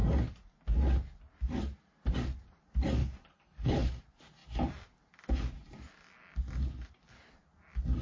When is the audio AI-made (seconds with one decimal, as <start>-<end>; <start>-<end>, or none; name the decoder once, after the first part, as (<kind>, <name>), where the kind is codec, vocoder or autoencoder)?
3.0-3.9 (codec, HILCodec)